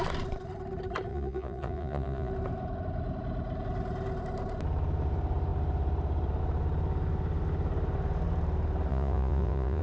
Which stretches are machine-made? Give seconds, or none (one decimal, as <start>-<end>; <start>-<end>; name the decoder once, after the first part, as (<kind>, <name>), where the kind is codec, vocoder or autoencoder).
1.1-2.3 (vocoder, Vocos); 8.9-9.8